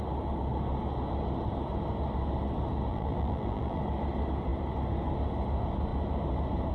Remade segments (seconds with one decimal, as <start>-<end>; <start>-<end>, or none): 2.9-3.8